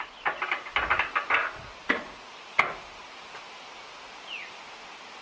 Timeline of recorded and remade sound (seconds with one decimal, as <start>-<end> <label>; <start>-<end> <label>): 0.0-5.2 recorded